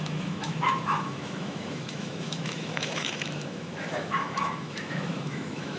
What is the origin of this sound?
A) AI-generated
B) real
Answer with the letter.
A